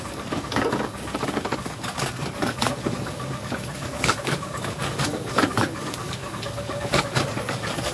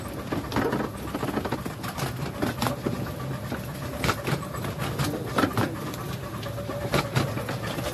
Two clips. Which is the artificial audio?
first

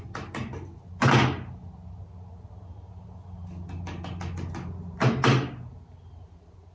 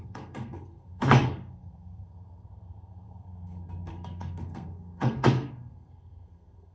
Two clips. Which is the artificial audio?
second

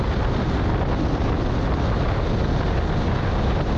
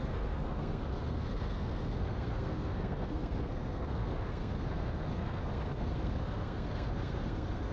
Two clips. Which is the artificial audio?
second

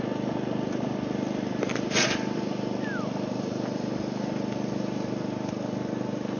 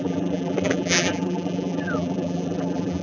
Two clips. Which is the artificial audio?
second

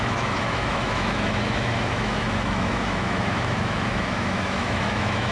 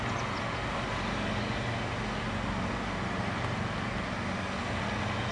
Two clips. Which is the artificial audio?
first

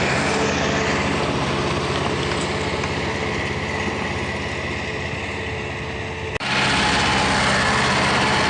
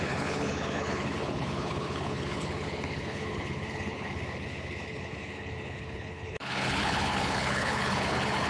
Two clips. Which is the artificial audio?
second